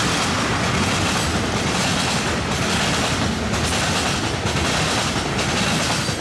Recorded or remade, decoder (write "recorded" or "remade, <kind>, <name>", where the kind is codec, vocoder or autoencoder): recorded